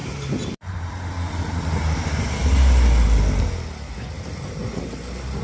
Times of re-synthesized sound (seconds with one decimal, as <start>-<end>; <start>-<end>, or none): 0.0-0.8